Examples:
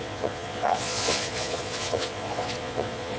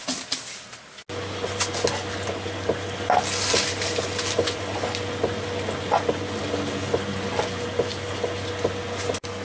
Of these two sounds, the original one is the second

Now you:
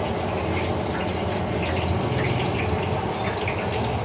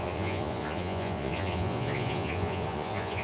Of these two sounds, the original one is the first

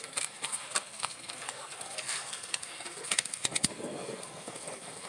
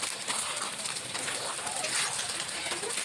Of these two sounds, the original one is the second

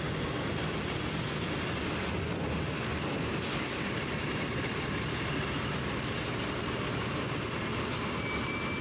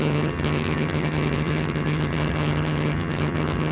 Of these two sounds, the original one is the first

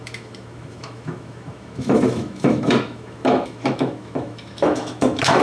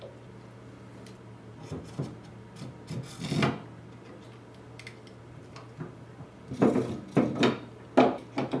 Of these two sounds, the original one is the second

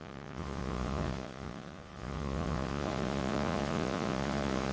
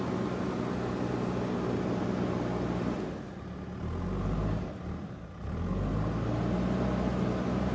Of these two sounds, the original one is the second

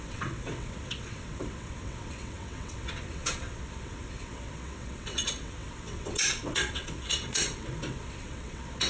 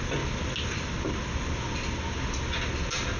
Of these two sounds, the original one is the second